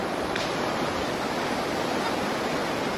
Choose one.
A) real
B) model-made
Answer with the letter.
A